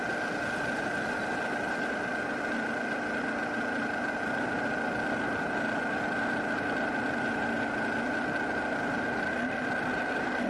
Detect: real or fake real